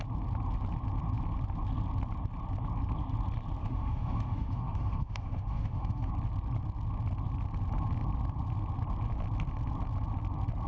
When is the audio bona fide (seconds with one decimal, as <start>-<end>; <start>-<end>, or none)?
0.0-3.6; 6.1-10.7